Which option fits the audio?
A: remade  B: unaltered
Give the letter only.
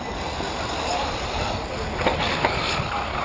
B